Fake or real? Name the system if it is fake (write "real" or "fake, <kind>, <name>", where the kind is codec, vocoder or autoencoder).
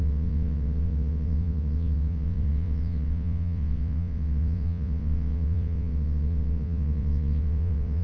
fake, vocoder, WaveNeXt